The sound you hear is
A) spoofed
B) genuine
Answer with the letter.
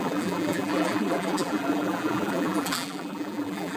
A